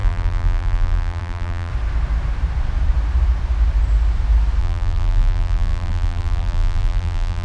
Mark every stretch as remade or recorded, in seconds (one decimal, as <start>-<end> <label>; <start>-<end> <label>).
0.0-1.7 remade; 1.7-4.6 recorded; 4.6-7.4 remade